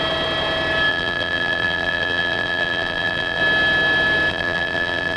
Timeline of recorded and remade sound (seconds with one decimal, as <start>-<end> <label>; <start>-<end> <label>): 0.0-0.9 recorded; 0.9-3.4 remade; 3.4-4.3 recorded; 4.3-5.2 remade